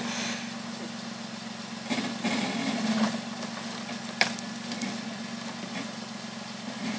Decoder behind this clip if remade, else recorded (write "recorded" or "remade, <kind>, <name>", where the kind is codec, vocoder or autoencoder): recorded